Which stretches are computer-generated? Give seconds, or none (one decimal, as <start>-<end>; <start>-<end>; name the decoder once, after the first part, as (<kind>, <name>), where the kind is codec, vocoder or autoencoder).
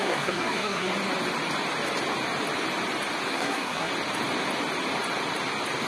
0.0-0.9 (codec, SNAC); 3.3-3.9